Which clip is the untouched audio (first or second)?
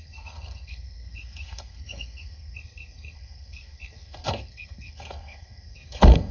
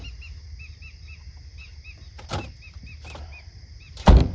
second